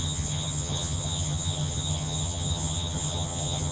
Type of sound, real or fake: fake